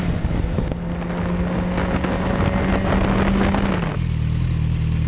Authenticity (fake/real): real